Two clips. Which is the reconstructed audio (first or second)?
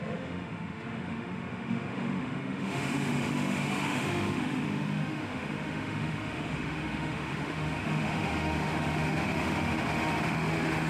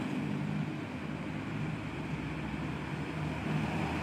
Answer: first